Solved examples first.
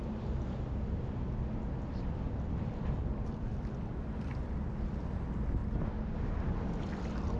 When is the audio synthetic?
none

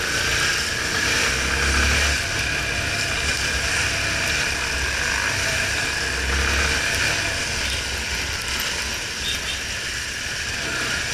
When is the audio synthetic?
none

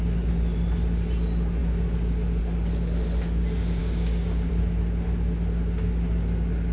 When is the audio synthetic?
3.8-4.5 (codec, DAC)